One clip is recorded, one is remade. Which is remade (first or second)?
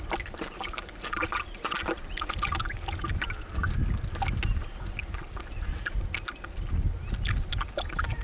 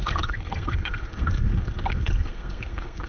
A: second